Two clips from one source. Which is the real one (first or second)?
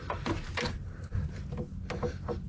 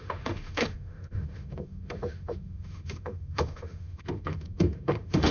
first